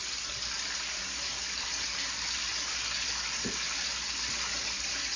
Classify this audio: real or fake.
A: real